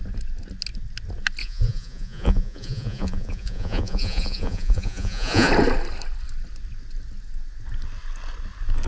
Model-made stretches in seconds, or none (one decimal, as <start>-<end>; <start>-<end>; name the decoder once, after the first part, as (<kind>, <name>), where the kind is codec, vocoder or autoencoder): 1.4-5.5 (vocoder, Vocos)